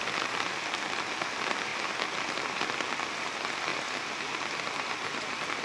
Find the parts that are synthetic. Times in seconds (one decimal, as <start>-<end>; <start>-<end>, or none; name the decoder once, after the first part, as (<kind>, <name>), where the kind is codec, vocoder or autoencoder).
none